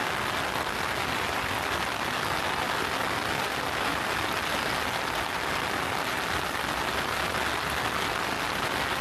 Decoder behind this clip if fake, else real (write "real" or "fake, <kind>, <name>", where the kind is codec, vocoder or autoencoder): real